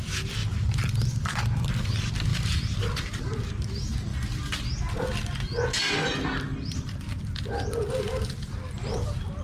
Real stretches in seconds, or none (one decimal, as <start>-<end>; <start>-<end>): 0.0-0.4; 1.7-2.3; 2.8-6.5; 7.2-9.4